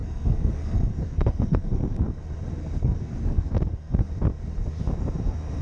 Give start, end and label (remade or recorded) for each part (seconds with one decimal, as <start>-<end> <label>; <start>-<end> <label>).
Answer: 0.0-2.1 remade; 2.1-2.6 recorded; 2.6-4.0 remade; 4.0-5.6 recorded